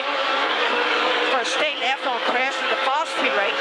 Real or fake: fake